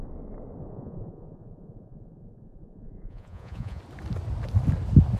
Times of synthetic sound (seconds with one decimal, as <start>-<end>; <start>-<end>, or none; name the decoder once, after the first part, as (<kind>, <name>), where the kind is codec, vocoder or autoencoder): 0.7-3.8 (vocoder, Vocos)

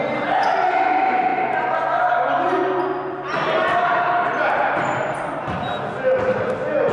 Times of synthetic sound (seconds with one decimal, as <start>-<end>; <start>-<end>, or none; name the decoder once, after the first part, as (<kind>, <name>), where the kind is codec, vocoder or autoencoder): none

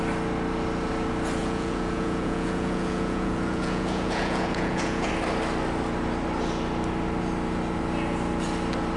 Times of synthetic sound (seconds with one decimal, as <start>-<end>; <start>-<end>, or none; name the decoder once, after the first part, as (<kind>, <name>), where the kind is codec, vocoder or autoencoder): 1.4-5.1 (vocoder, Vocos)

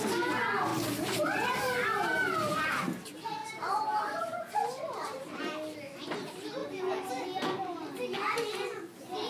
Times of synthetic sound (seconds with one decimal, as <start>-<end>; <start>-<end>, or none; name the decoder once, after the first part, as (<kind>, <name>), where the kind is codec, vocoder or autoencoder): 0.7-2.7 (vocoder, BigVGAN v2); 3.4-5.4; 6.6-7.1

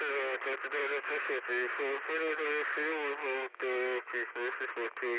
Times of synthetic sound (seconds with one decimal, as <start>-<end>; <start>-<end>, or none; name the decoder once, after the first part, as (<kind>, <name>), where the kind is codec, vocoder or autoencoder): 0.8-1.4 (autoencoder, DAC-VAE); 3.2-4.3

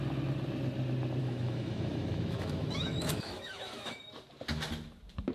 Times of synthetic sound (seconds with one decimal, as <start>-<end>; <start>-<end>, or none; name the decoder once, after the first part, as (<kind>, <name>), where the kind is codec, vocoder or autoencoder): 1.2-4.0 (autoencoder, DAC-VAE)

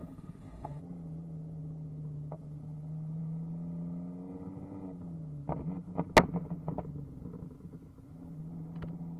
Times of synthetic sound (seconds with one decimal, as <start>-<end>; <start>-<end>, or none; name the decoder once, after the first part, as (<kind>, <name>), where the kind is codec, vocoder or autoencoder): 0.0-0.8 (autoencoder, DAC-VAE)